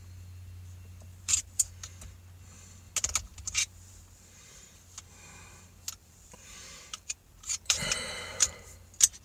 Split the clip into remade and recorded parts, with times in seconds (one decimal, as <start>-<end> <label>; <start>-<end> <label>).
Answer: 0.0-1.1 recorded; 1.1-1.7 remade; 1.7-3.3 recorded; 3.3-4.8 remade; 4.8-6.0 recorded; 6.0-8.6 remade; 8.6-9.2 recorded